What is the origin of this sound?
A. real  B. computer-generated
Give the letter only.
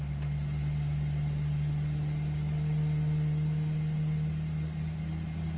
A